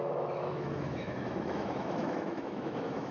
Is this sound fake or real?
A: fake